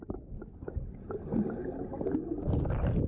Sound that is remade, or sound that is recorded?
recorded